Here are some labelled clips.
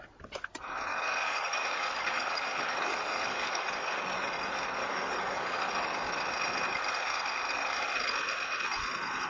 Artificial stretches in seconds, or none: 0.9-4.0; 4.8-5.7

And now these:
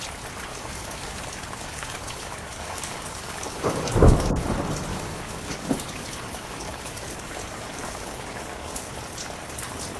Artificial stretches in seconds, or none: 0.5-4.3; 4.9-8.9

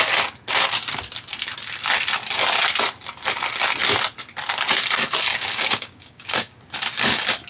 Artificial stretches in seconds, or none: 5.3-6.5

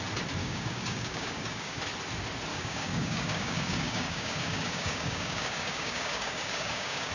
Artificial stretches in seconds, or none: 0.4-1.8; 2.5-7.1

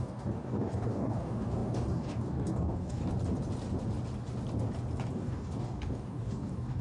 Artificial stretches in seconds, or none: 0.0-3.0; 5.1-6.8

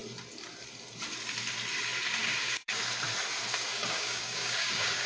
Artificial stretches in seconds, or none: 2.2-2.8; 3.7-5.1